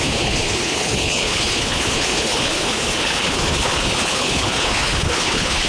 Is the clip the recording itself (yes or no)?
no